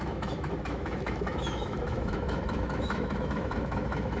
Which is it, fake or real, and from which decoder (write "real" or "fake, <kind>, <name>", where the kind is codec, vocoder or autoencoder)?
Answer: fake, autoencoder, DAC-VAE